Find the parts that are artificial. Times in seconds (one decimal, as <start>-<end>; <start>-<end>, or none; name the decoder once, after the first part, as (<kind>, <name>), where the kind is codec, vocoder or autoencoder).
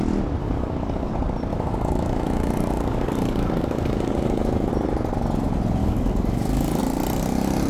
0.4-1.1 (codec, DAC); 1.5-4.7; 5.8-6.8